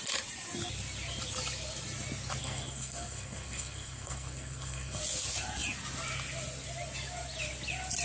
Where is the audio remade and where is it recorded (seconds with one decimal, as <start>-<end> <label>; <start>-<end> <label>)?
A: 0.0-2.4 recorded; 2.4-5.0 remade; 5.0-8.0 recorded